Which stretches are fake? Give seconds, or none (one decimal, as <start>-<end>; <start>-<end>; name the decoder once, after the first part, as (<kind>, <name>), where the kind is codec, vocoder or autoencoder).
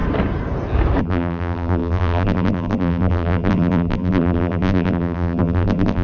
1.0-6.0 (vocoder, BigVGAN v2)